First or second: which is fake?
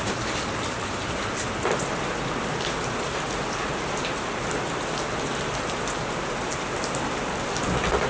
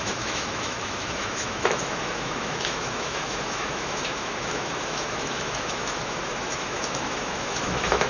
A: second